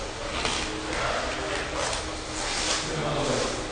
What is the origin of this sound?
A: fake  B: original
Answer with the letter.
B